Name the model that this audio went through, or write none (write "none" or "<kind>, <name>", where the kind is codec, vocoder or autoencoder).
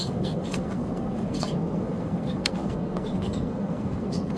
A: codec, SNAC